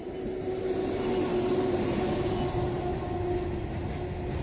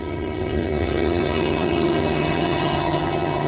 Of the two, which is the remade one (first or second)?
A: second